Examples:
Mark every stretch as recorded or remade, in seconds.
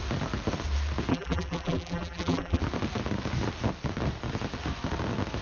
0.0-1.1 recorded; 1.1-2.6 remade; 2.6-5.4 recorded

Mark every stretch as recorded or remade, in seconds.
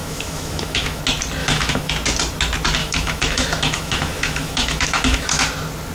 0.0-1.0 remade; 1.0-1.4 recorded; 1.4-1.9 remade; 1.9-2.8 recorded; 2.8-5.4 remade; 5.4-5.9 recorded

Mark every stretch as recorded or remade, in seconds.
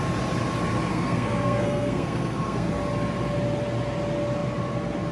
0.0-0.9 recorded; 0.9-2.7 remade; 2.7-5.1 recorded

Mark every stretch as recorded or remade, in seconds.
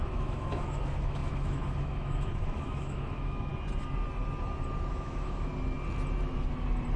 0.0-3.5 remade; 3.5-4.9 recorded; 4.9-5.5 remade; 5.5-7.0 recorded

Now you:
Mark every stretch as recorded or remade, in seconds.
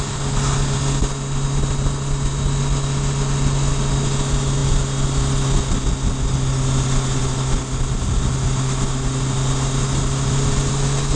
0.0-11.2 recorded